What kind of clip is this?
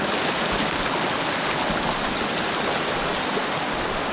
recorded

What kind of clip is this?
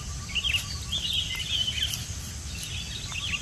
recorded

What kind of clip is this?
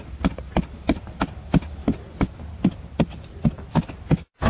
recorded